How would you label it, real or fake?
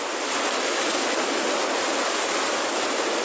real